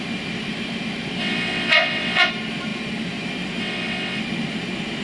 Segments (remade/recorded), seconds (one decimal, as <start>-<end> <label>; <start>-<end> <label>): 0.0-1.2 recorded; 1.2-2.3 remade; 2.3-3.6 recorded; 3.6-4.2 remade; 4.2-5.0 recorded